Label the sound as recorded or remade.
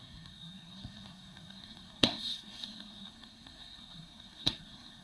remade